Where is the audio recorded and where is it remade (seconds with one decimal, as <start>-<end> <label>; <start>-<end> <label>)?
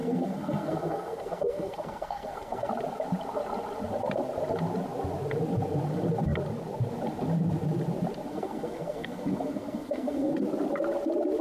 0.0-2.7 remade; 2.7-8.3 recorded; 8.3-10.3 remade; 10.3-11.4 recorded